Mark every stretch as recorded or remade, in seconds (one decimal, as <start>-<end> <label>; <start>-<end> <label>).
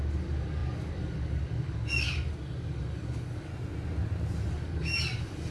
0.0-3.5 remade; 3.5-4.5 recorded; 4.5-5.5 remade